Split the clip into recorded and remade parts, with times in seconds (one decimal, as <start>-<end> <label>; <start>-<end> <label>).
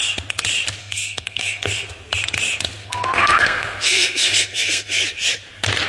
0.0-0.8 recorded; 0.8-1.9 remade; 1.9-2.8 recorded; 2.8-5.0 remade; 5.0-5.9 recorded